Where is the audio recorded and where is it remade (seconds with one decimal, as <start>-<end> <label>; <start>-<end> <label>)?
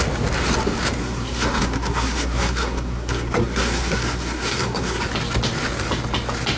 0.0-1.0 recorded; 1.0-5.0 remade; 5.0-6.6 recorded